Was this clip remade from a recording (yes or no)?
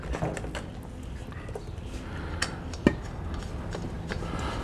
no